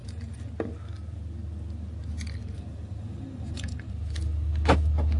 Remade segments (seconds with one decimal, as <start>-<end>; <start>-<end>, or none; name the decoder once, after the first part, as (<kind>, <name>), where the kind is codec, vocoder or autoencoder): 0.0-0.5 (vocoder, BigVGAN v2); 2.4-3.9